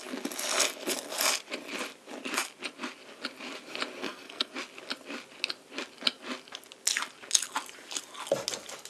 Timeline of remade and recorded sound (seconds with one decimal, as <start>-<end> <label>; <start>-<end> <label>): 0.0-4.0 recorded; 4.0-4.5 remade; 4.5-8.9 recorded